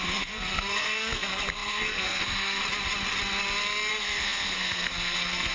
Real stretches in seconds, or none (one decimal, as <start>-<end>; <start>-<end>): 2.6-3.9